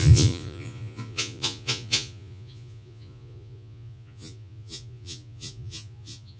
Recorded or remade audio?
remade